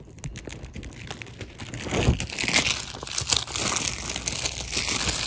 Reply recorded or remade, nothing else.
recorded